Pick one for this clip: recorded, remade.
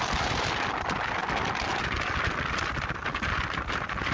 recorded